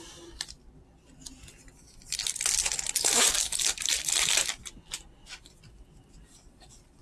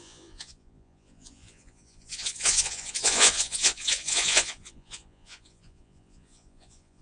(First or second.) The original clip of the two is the first